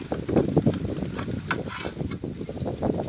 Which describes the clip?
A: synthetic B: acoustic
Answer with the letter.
B